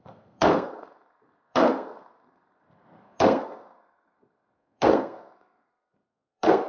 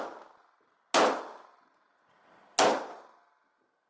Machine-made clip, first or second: first